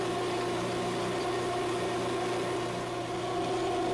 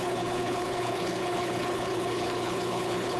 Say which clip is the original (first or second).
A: first